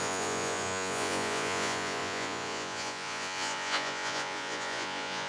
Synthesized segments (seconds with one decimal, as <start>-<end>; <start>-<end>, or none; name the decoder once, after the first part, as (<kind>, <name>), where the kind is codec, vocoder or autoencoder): 0.0-5.3 (vocoder, Vocos)